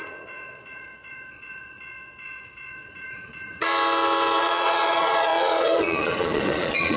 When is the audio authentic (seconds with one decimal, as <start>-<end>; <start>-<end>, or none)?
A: 3.7-4.4